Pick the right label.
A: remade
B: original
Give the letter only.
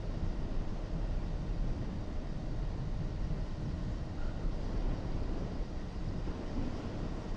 B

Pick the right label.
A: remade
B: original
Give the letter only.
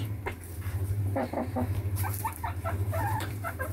A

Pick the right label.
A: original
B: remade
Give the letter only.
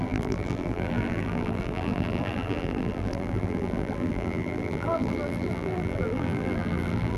B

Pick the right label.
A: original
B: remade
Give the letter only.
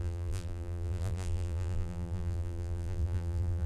B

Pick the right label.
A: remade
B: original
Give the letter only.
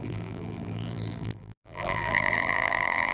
A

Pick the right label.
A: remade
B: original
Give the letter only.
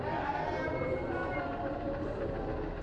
B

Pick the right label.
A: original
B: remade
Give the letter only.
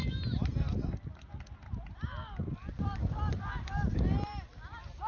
A